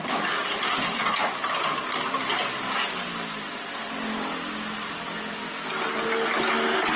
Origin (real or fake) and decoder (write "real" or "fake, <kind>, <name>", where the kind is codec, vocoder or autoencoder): real